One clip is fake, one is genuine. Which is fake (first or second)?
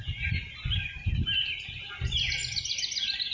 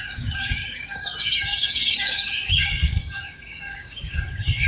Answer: second